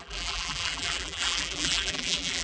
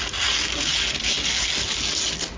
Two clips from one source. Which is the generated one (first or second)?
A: first